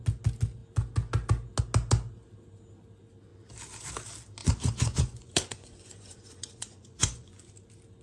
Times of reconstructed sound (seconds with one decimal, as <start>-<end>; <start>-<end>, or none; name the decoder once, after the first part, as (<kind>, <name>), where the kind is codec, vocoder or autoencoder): 4.4-7.5 (vocoder, Vocos)

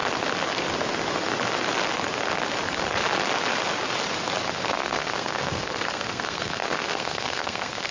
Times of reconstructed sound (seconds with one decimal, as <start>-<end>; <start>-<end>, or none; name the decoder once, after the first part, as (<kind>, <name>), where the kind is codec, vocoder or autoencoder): 4.7-7.9 (codec, SNAC)

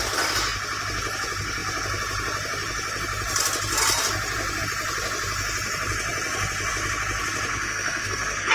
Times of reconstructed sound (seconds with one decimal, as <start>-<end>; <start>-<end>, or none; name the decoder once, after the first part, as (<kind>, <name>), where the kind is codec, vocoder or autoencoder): 7.5-8.5 (codec, SNAC)

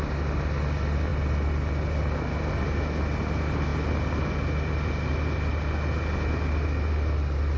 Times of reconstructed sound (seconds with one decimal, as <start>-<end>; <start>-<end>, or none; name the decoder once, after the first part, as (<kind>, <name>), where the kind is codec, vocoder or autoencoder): none